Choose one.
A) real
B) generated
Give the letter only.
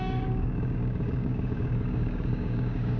B